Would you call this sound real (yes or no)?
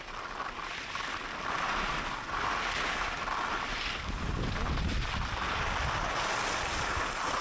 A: yes